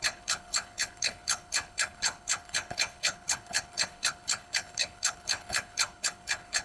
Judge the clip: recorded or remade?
remade